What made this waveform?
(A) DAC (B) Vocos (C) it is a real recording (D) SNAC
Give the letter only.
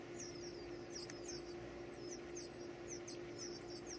C